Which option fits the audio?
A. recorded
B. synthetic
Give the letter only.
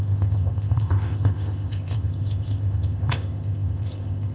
B